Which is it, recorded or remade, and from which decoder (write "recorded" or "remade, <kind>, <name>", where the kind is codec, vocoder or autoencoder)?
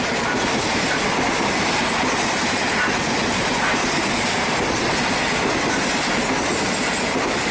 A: recorded